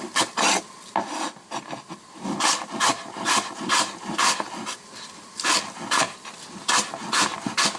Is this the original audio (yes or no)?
yes